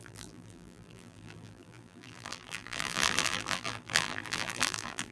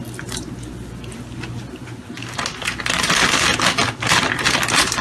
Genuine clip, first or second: second